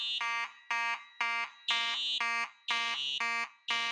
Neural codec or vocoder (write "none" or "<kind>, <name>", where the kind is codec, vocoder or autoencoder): none